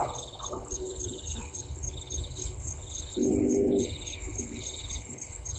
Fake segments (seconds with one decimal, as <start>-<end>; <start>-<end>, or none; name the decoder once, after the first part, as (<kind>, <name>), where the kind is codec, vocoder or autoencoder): 0.0-5.6 (codec, HILCodec)